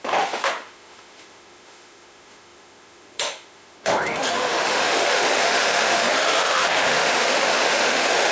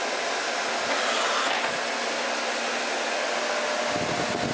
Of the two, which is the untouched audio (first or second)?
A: second